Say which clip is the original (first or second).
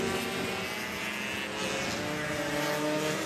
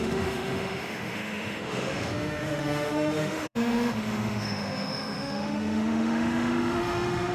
first